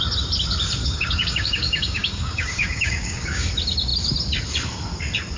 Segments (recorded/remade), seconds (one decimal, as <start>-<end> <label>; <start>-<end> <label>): 0.0-0.8 recorded; 0.8-3.5 remade; 3.5-5.4 recorded